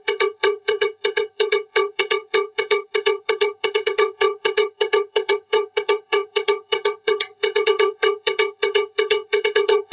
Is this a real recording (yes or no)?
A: no